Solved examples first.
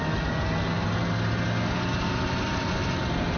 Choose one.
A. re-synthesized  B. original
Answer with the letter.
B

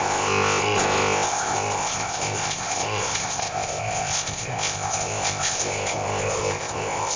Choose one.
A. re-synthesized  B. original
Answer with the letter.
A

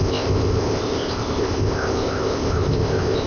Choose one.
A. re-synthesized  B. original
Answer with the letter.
A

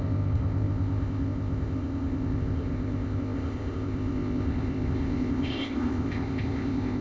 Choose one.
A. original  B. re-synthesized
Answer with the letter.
B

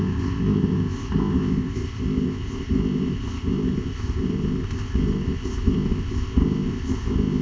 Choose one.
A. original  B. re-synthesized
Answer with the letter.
B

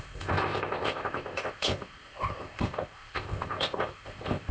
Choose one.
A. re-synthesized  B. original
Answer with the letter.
A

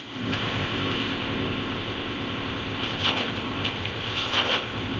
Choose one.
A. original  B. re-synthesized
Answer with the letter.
B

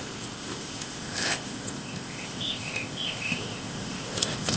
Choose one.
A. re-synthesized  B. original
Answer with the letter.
A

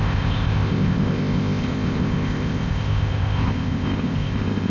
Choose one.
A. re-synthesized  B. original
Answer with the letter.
A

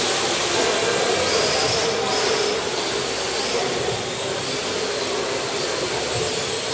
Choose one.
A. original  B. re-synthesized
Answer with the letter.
A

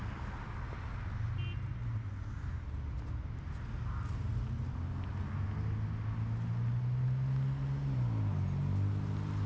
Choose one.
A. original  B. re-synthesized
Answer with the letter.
A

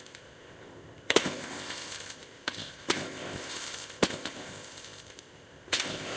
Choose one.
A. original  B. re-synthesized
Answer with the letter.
B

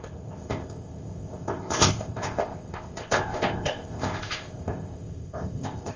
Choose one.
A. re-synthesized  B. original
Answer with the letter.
A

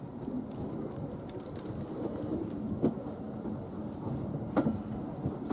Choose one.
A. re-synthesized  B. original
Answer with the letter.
B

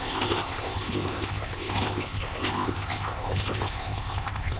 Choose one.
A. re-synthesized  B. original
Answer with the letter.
A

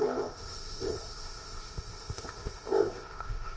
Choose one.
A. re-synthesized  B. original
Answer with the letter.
A